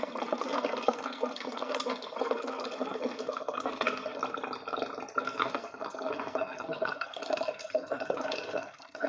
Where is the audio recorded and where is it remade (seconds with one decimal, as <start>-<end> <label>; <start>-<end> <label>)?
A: 0.0-4.2 remade; 4.2-5.2 recorded; 5.2-9.1 remade